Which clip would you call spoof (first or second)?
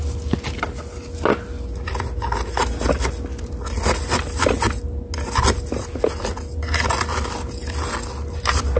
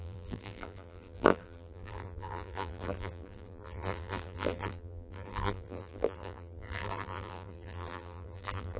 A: second